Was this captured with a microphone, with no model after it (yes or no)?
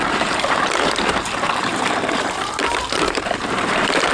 no